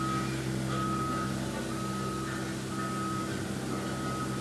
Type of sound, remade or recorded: recorded